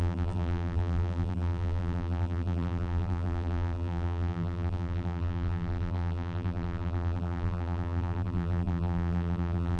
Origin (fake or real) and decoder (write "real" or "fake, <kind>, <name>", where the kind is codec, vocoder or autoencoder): fake, vocoder, BigVGAN v2